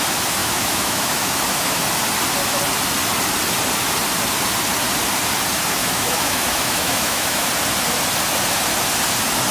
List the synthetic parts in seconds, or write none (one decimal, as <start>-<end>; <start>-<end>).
0.4-1.8; 5.8-7.5

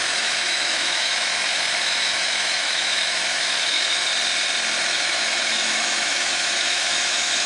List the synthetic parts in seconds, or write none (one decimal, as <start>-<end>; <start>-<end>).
0.0-4.1; 4.8-7.5